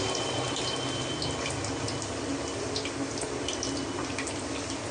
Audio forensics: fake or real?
real